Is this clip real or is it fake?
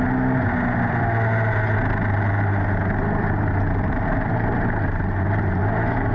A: real